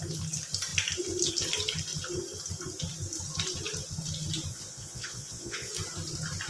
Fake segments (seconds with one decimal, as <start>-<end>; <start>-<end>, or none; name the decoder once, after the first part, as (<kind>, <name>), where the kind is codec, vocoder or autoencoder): 4.5-5.7 (vocoder, Vocos)